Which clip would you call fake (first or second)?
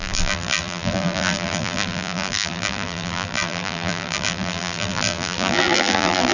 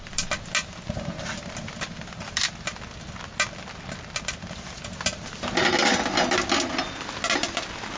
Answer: first